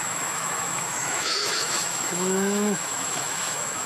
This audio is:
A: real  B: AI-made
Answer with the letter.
B